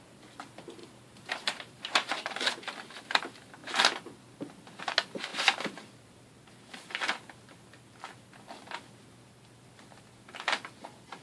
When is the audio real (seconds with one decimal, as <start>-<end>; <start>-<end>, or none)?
0.0-0.8; 2.1-11.2